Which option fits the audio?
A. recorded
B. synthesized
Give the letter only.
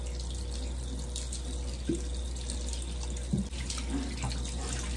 A